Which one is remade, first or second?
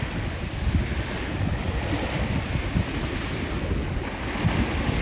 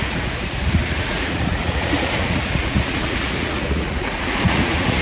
second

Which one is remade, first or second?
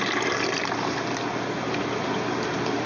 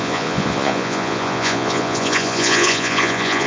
second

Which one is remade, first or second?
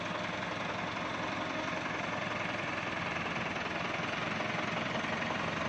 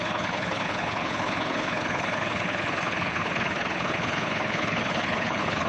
second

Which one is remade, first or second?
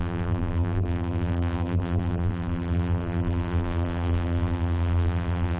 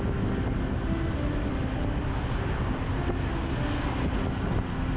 first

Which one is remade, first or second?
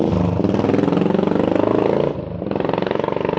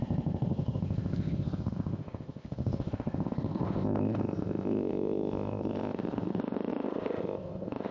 second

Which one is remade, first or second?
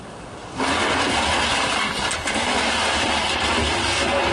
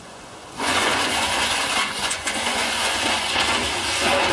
second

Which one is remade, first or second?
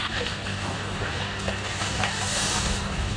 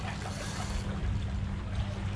first